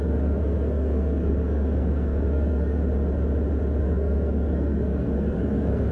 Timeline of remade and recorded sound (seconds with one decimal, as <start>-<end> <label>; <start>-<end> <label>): 0.0-2.8 remade; 2.8-3.8 recorded; 3.8-5.9 remade